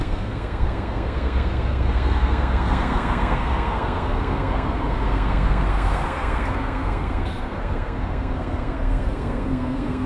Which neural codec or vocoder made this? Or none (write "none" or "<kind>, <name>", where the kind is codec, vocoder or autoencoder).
codec, SNAC